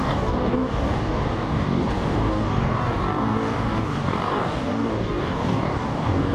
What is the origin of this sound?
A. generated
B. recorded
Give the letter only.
A